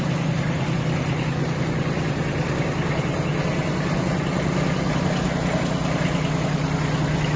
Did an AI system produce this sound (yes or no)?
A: no